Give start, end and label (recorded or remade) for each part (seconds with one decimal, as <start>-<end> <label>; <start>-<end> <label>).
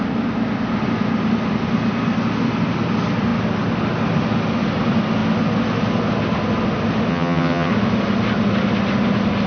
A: 0.0-7.1 recorded; 7.1-7.7 remade; 7.7-9.5 recorded